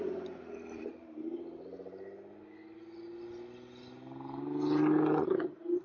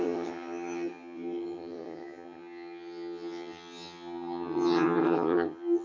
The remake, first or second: second